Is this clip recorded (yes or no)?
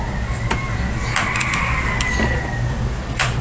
yes